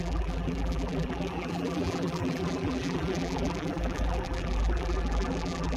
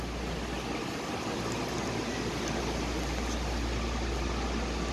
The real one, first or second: second